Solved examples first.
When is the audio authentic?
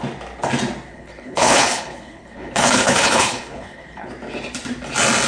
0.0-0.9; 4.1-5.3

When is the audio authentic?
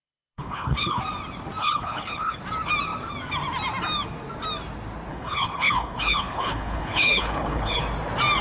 1.0-1.6; 2.4-5.1; 7.8-8.4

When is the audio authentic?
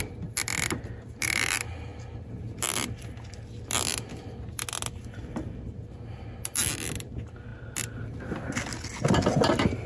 0.0-9.9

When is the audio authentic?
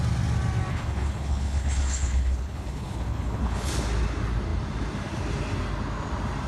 0.0-0.7; 3.7-6.5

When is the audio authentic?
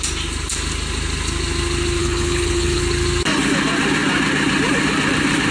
0.0-2.0; 2.8-5.5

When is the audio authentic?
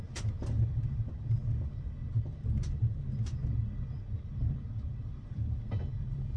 0.0-6.4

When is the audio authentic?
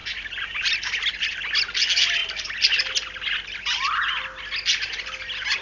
0.0-5.6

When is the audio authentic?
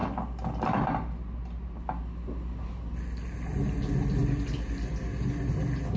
0.0-6.0